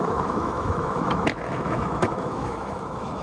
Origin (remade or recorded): remade